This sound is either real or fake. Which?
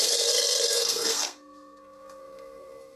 fake